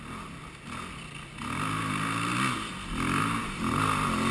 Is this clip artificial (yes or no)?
no